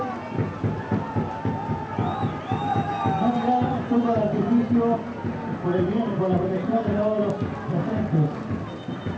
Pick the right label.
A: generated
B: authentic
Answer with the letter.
B